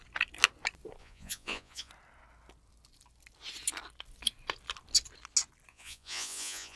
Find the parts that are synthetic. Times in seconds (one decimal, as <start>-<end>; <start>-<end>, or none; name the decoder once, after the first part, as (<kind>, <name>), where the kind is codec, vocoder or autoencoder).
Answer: 1.0-1.9 (vocoder, Vocos); 5.7-6.8